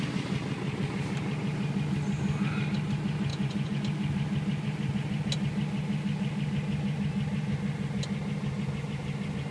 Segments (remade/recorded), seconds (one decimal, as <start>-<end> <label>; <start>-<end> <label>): 0.0-3.3 recorded; 3.3-3.8 remade; 3.8-9.5 recorded